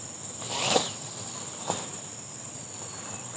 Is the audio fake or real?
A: real